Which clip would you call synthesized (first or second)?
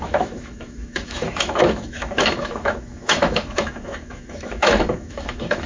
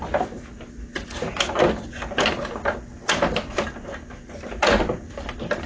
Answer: first